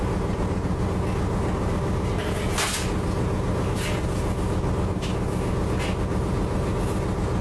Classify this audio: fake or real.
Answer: real